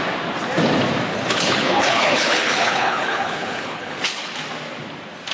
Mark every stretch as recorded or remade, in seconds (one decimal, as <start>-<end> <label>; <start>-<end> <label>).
0.0-1.1 recorded; 1.1-4.3 remade; 4.3-5.3 recorded